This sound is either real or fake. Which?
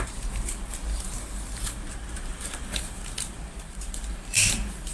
fake